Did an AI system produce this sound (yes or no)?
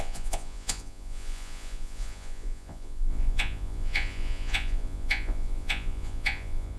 yes